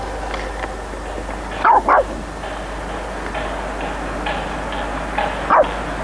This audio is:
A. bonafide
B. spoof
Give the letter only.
A